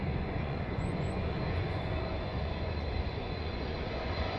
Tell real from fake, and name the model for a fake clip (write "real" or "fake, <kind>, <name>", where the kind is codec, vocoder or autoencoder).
fake, vocoder, Vocos